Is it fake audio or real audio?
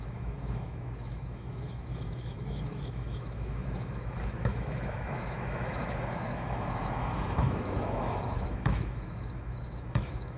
fake